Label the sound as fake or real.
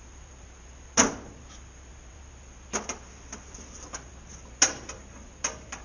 real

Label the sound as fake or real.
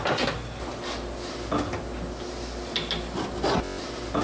real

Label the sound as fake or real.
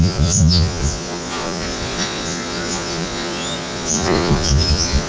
fake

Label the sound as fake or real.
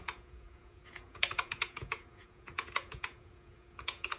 fake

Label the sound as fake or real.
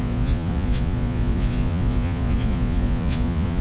fake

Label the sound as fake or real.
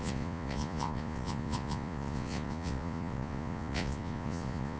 fake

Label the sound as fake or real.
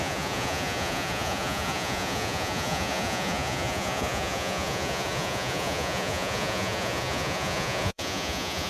fake